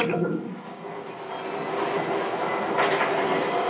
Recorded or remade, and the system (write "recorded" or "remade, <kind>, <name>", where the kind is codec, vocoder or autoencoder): recorded